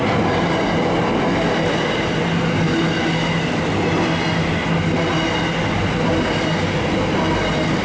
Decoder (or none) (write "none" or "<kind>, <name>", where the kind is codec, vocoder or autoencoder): none